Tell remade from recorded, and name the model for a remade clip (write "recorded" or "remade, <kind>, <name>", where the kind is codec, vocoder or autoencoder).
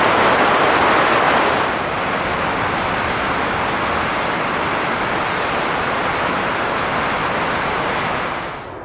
recorded